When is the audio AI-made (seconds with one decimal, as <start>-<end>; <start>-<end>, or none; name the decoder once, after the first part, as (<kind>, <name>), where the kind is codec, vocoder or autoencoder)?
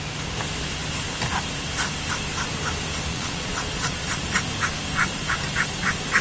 3.1-4.2 (vocoder, Vocos)